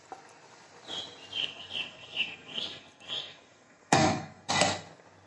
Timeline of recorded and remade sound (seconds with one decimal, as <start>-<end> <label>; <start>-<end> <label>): 0.0-1.4 recorded; 1.4-4.5 remade; 4.5-5.3 recorded